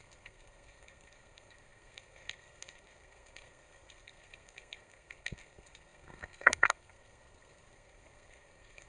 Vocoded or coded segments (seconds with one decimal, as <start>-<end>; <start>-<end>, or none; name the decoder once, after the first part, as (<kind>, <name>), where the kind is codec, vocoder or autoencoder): 0.0-8.9 (codec, SNAC)